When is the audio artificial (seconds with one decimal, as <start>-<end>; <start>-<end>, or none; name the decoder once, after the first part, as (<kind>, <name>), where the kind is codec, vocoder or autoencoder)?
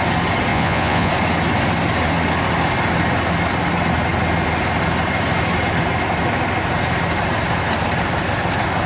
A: 0.5-1.1 (vocoder, Vocos)